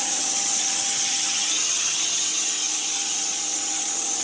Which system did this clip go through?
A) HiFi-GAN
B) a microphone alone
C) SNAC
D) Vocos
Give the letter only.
A